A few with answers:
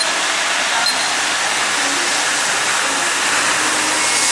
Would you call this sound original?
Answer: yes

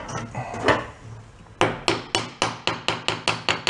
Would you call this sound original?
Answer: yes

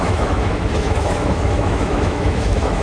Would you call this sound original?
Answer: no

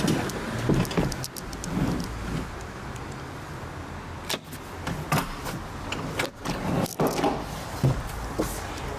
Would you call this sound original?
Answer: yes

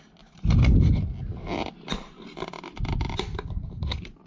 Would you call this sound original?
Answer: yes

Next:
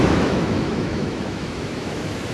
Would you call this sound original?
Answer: no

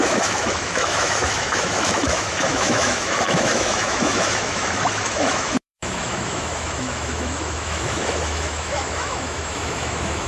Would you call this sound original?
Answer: no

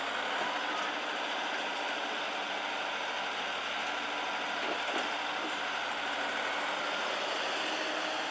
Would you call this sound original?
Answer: yes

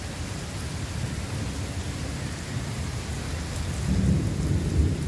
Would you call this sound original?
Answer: yes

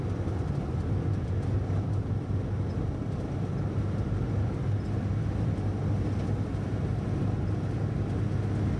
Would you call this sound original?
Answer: yes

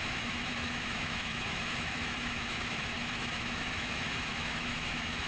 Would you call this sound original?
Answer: no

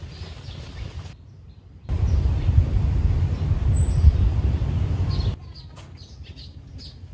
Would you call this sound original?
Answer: yes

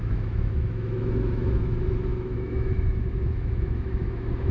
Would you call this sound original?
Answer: no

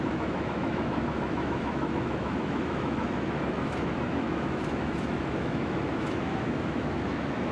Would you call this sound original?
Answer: no